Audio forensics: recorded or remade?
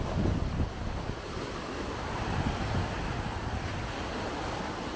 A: recorded